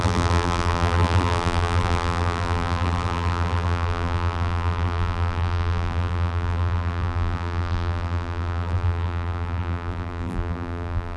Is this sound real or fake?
fake